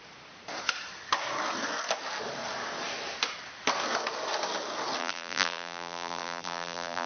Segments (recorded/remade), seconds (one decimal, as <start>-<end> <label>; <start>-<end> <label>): 0.0-5.0 recorded; 5.0-7.1 remade